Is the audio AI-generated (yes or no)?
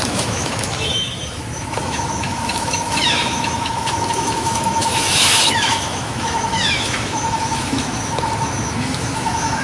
yes